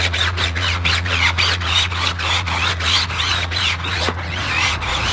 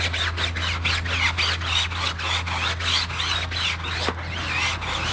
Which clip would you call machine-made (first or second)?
first